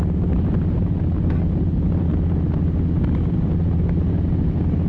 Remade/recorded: recorded